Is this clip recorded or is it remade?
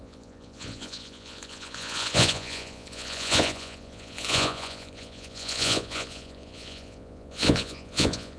remade